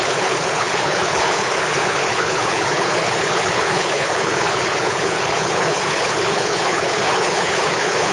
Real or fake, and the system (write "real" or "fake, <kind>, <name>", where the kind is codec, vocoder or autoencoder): fake, codec, HILCodec